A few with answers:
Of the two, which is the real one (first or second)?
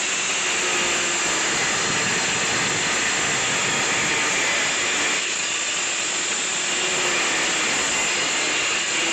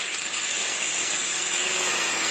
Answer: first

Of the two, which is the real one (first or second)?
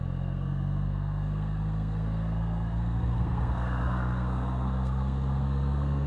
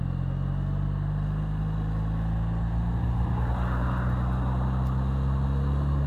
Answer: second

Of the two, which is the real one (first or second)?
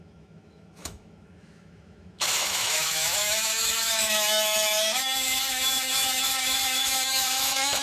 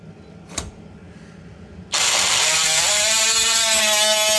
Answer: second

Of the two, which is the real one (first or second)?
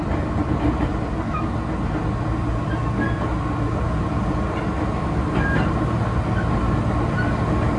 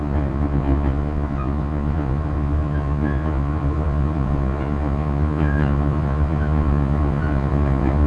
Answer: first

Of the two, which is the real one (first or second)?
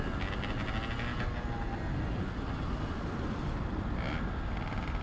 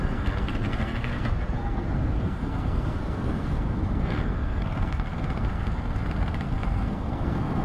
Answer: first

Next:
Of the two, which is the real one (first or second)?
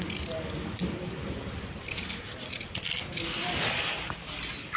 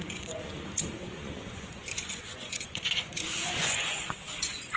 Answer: first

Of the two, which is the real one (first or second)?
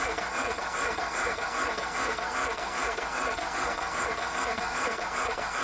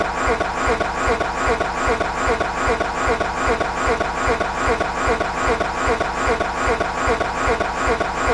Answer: second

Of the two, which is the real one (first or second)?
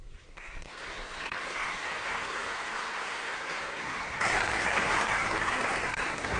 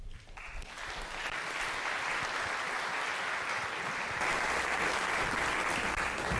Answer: second